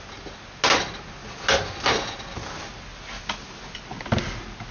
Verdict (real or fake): real